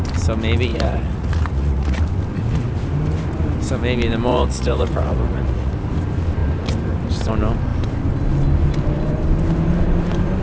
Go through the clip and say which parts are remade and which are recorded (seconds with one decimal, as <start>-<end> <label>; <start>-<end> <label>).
0.0-0.7 recorded; 0.7-2.0 remade; 2.0-4.3 recorded; 4.3-5.7 remade; 5.7-10.4 recorded